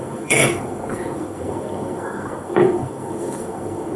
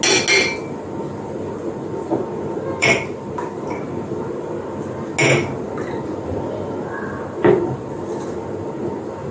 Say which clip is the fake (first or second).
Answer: first